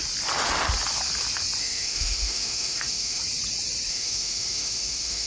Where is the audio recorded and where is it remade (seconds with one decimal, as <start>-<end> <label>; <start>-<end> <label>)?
0.0-1.6 recorded; 1.6-3.2 remade; 3.2-3.9 recorded; 3.9-5.3 remade